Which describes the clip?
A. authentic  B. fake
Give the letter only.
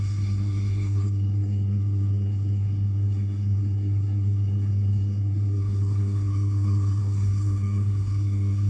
B